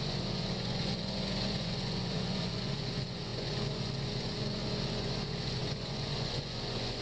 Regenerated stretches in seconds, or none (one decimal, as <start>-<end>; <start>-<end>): 0.0-7.0